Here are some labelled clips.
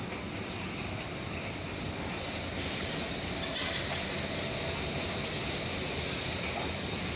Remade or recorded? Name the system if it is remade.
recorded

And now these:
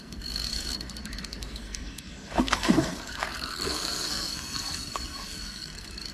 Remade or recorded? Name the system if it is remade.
remade, codec, SNAC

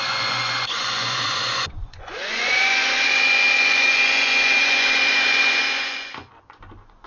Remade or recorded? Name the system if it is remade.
remade, vocoder, Vocos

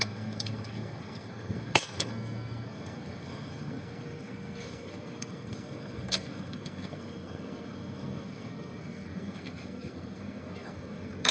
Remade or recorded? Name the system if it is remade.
remade, codec, SNAC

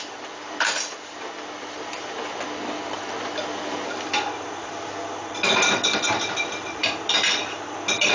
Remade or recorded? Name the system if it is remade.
remade, vocoder, BigVGAN v2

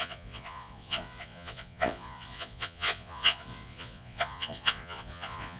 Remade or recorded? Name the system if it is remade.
remade, vocoder, Vocos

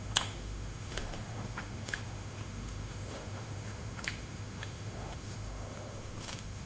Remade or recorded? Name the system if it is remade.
remade, autoencoder, DAC-VAE